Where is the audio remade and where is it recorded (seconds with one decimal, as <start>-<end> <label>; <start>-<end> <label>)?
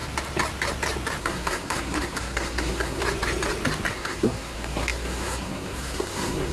0.0-1.2 recorded; 1.2-3.0 remade; 3.0-3.9 recorded; 3.9-6.5 remade